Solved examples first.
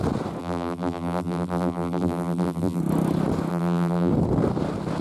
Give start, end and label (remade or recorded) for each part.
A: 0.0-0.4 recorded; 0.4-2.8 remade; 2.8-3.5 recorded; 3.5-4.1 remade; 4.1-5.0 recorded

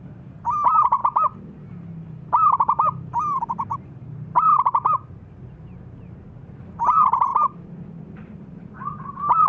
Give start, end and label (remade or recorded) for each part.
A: 0.0-1.0 remade; 1.0-3.9 recorded; 3.9-7.3 remade; 7.3-8.1 recorded; 8.1-9.5 remade

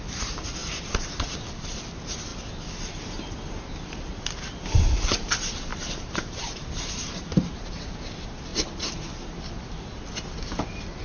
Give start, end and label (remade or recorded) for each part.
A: 0.0-5.7 recorded; 5.7-7.8 remade; 7.8-8.5 recorded; 8.5-9.1 remade; 9.1-11.0 recorded

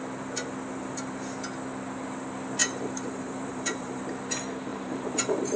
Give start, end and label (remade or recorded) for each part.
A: 0.0-2.6 recorded; 2.6-4.0 remade; 4.0-4.7 recorded; 4.7-5.6 remade

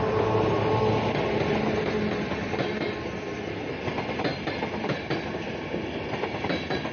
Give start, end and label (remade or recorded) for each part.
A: 0.0-4.3 recorded; 4.3-5.5 remade; 5.5-6.9 recorded

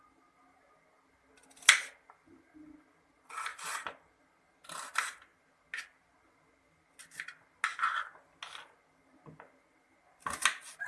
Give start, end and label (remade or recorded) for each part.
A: 0.0-3.5 recorded; 3.5-4.2 remade; 4.2-7.7 recorded; 7.7-8.4 remade; 8.4-10.9 recorded

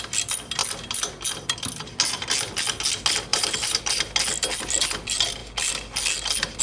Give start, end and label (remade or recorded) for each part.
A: 0.0-3.3 recorded; 3.3-3.8 remade; 3.8-6.6 recorded